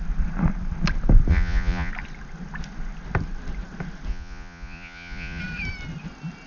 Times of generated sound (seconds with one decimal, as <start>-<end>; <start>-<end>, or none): 1.3-1.9; 4.1-5.4